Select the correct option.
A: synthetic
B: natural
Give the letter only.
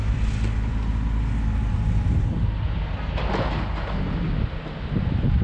B